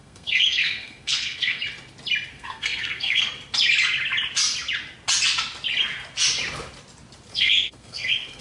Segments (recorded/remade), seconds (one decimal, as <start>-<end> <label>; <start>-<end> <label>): 0.0-1.6 remade; 1.6-2.3 recorded; 2.3-3.3 remade; 3.3-7.3 recorded; 7.3-8.4 remade